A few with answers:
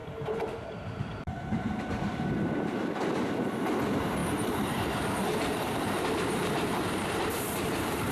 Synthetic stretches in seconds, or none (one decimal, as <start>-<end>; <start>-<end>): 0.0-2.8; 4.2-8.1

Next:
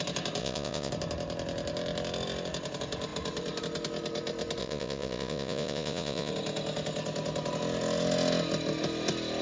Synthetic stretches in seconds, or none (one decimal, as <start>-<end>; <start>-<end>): 0.4-0.9; 4.6-6.3

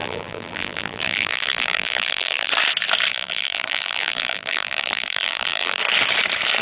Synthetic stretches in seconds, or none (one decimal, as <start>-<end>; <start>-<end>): 0.0-2.5; 3.1-5.8